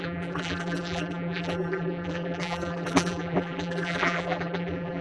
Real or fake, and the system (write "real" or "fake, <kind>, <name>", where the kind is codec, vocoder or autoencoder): fake, vocoder, BigVGAN v2